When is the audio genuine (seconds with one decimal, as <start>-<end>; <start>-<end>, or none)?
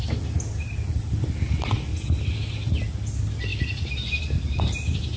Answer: 0.0-5.2